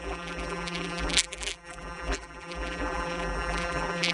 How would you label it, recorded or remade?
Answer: remade